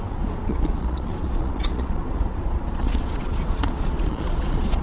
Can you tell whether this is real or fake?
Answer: fake